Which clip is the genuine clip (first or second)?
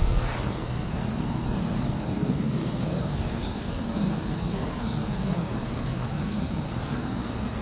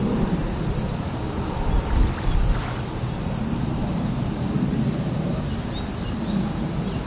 second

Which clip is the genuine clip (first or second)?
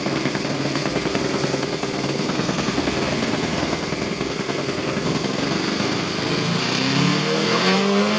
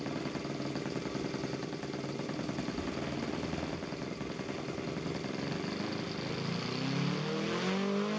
second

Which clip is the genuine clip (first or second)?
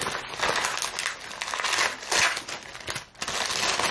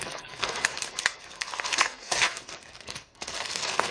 first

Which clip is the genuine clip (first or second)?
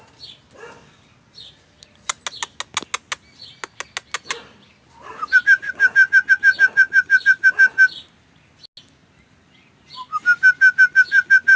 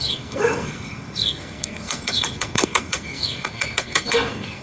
first